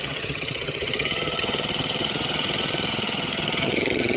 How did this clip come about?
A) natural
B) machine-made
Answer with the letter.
B